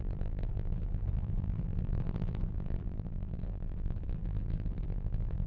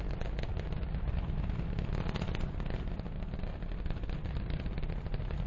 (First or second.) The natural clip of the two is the second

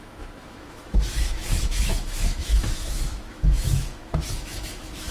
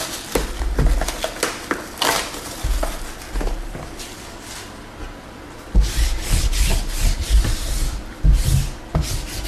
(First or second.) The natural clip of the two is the second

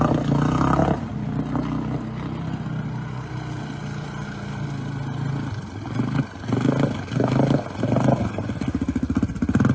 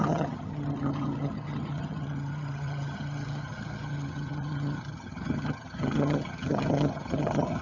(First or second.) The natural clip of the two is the first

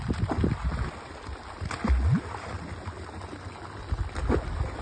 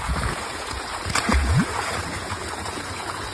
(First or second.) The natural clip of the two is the first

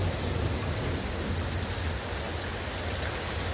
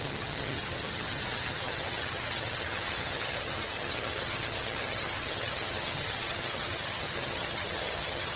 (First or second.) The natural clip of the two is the first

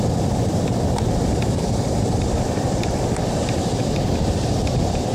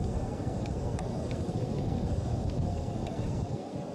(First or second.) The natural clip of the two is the first